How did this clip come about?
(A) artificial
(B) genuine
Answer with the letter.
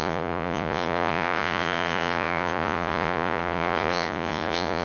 A